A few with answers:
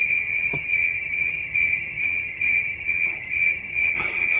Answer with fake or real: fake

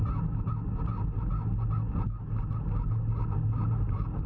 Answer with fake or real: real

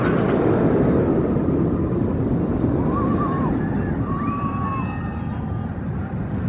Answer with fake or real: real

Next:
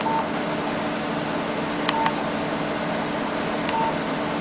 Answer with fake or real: real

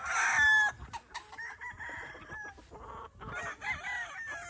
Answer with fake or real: real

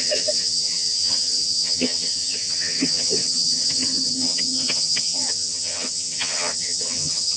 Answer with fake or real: fake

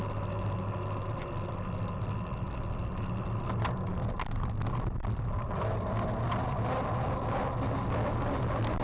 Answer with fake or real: real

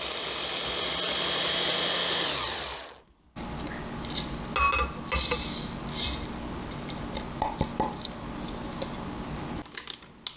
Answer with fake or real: real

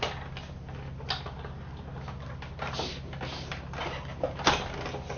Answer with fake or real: real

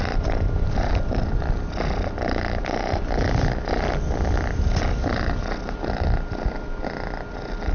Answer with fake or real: real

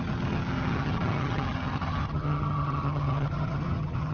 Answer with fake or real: fake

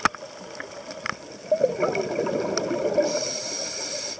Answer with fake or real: real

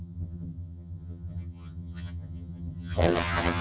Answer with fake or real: fake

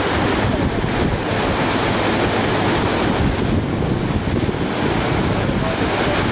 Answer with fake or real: real